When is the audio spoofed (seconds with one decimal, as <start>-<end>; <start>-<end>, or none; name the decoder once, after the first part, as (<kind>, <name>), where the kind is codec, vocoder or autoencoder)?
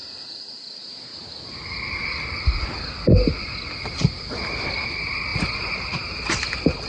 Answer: 0.0-1.1 (vocoder, BigVGAN v2); 4.6-6.9